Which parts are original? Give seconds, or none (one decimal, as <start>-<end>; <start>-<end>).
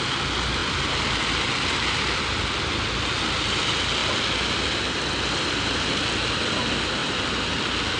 0.0-8.0